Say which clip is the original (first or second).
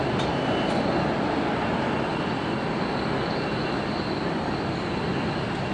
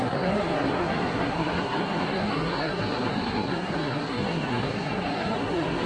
first